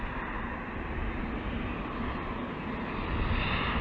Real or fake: real